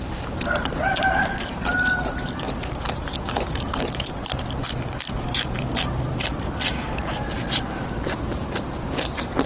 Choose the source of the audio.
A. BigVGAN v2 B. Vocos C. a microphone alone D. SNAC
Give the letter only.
A